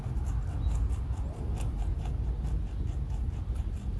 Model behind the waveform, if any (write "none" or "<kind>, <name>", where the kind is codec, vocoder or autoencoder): none